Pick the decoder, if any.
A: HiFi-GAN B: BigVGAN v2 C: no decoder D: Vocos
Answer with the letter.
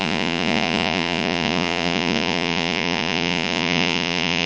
D